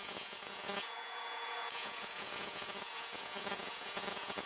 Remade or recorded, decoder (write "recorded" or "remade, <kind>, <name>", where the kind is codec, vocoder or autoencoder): remade, vocoder, Vocos